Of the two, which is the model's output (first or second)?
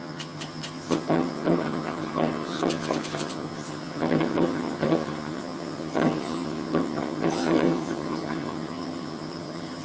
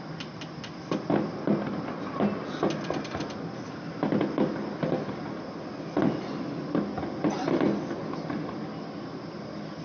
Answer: first